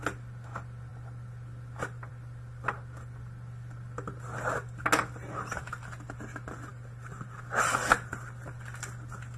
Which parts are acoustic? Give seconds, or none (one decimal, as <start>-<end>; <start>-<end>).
0.0-9.4